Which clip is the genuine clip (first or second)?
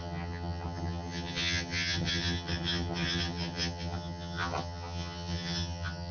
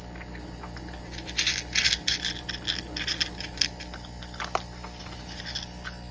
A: second